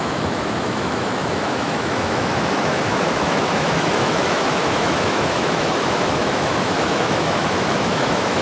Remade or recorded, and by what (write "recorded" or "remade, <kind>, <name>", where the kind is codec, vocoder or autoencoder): remade, autoencoder, DAC-VAE